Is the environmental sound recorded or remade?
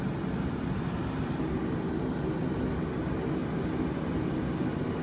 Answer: recorded